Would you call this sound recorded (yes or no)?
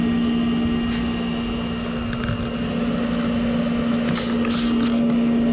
yes